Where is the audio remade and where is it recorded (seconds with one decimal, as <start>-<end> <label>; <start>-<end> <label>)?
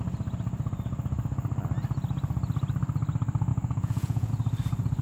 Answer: 0.0-3.5 recorded; 3.5-4.3 remade; 4.3-5.0 recorded